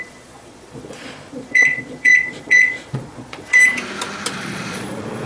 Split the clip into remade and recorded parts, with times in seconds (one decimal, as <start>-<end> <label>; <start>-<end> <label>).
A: 0.0-3.6 remade; 3.6-4.3 recorded; 4.3-5.3 remade